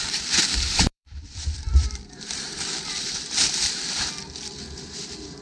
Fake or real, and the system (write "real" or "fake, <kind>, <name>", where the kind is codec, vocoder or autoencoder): fake, vocoder, BigVGAN v2